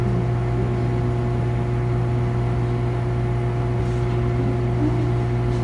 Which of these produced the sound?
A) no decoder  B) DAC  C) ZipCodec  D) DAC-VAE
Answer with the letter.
A